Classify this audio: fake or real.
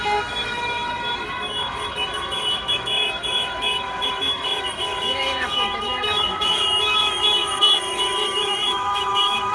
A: fake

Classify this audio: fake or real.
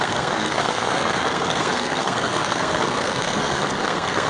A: fake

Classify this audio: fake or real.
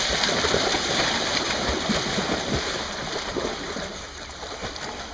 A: fake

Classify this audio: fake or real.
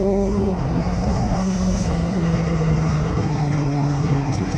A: fake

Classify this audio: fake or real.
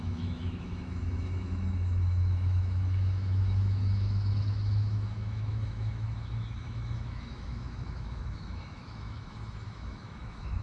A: fake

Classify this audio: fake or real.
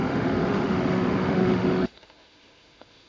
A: fake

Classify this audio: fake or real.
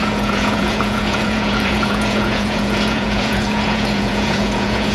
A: fake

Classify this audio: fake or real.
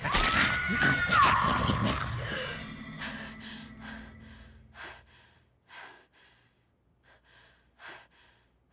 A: real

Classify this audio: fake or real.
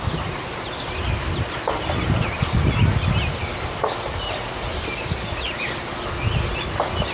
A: real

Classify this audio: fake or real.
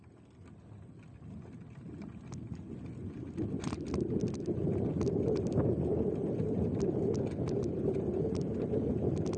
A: real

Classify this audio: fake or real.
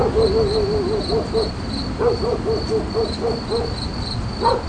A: real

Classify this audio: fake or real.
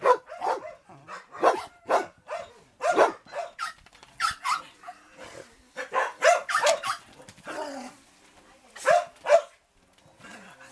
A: real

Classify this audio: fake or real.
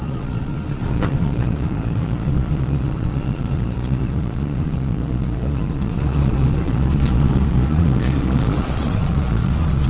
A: fake